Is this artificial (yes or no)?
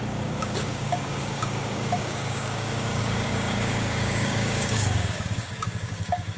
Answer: yes